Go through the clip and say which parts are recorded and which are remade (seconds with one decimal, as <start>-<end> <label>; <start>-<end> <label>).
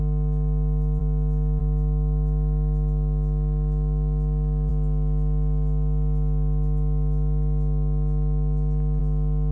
0.0-9.5 recorded